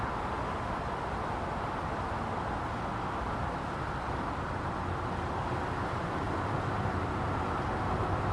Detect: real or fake real